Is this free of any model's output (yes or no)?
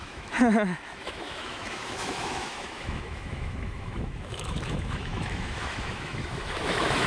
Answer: no